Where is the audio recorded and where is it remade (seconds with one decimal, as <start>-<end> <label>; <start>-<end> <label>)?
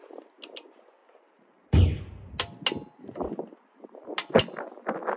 0.0-1.0 recorded; 1.0-2.0 remade; 2.0-5.2 recorded